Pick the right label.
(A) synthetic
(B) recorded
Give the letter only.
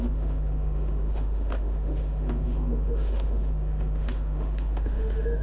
A